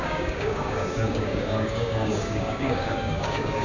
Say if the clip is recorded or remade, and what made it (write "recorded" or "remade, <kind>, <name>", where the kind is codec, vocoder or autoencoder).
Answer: remade, codec, DAC